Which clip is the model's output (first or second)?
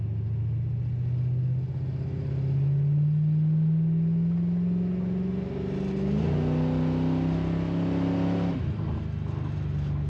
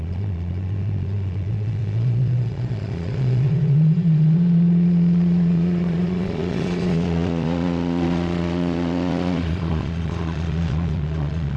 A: second